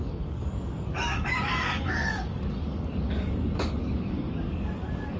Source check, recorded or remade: remade